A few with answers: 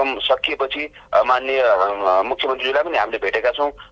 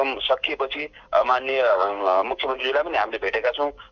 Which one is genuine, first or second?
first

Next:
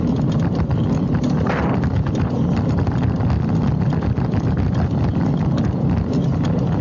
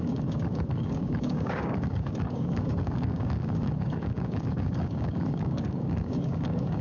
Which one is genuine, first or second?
first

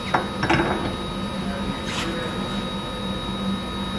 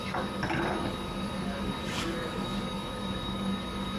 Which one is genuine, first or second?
first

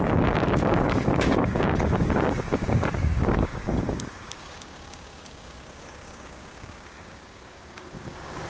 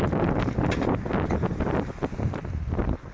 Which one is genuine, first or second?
second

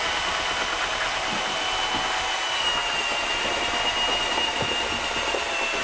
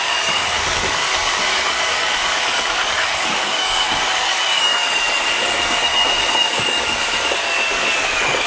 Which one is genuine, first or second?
first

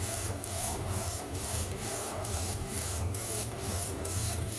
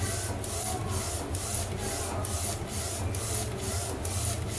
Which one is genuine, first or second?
second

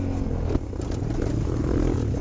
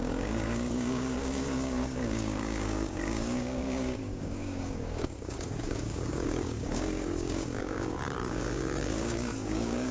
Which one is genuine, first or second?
first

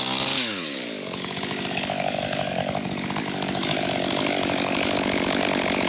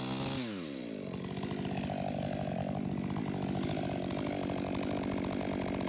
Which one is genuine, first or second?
second